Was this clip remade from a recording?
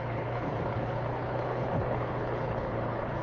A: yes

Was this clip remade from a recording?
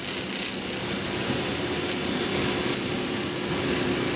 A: no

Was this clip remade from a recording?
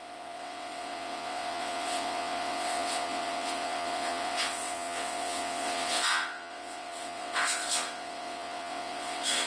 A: yes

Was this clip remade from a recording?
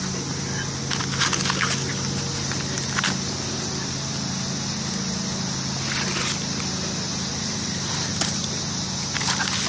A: no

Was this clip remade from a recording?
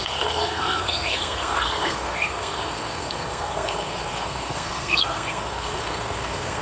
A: yes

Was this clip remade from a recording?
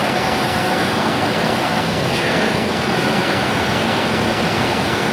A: yes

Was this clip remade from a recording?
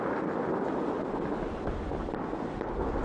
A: no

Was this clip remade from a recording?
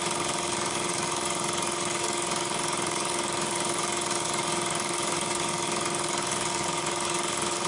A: yes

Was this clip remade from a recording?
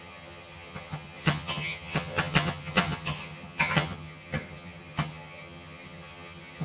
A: yes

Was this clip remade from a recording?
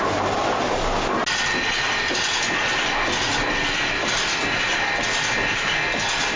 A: no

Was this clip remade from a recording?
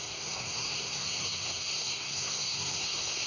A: yes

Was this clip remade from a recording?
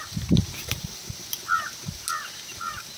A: no